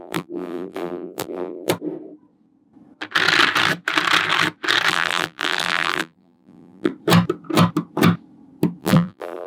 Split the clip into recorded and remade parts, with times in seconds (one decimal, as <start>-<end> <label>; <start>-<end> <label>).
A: 0.0-1.7 remade; 1.7-4.9 recorded; 4.9-6.9 remade; 6.9-8.8 recorded; 8.8-9.5 remade